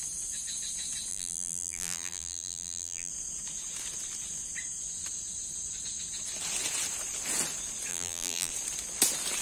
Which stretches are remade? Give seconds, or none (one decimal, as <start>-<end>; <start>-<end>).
1.1-3.1; 7.9-8.5